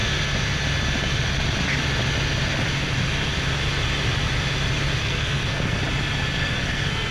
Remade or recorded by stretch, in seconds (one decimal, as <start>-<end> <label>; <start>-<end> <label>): 0.0-5.0 recorded; 5.0-5.8 remade; 5.8-6.4 recorded; 6.4-7.1 remade